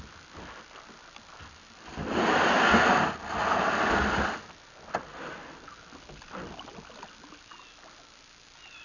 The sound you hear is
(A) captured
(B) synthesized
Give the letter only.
A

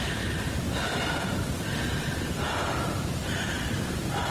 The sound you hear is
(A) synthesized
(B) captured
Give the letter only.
B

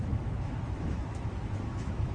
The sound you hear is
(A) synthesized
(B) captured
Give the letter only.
A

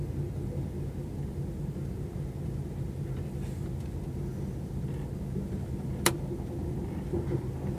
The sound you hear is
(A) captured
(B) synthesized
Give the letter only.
A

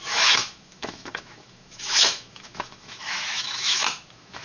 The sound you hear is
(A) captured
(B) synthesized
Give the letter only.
B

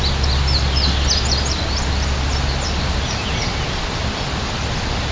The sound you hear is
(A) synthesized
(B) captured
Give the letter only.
B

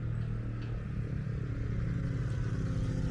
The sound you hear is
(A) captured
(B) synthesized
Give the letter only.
A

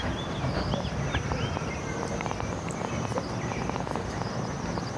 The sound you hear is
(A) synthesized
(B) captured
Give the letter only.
B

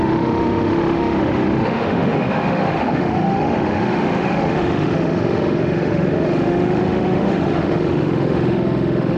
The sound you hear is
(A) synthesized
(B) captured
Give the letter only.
A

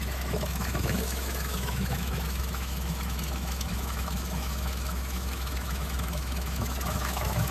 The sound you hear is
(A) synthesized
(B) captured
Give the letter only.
A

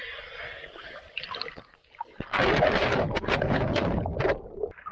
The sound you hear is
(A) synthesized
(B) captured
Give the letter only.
B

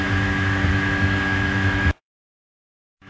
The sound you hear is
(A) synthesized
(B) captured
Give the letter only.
A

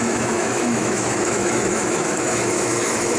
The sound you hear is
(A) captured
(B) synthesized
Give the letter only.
B